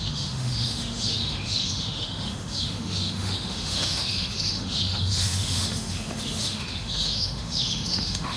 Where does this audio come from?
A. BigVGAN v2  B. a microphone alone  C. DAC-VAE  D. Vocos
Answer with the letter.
C